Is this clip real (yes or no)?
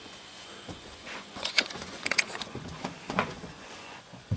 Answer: no